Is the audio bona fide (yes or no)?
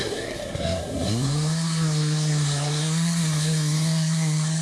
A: no